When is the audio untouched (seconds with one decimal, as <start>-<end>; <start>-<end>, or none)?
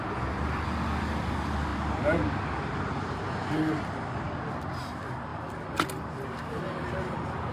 1.7-4.5; 5.3-5.8